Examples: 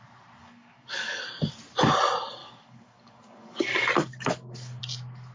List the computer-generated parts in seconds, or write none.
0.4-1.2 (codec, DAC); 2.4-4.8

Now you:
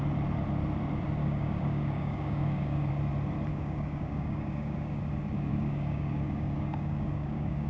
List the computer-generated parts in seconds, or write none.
1.2-2.9 (codec, DAC); 3.5-5.0; 5.5-7.7

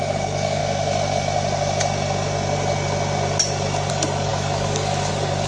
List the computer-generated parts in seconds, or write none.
0.0-0.6 (codec, DAC); 3.9-5.5